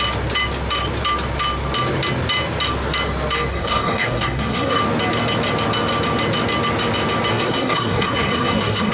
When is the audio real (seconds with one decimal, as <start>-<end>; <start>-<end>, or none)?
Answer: 0.0-3.5; 4.8-7.3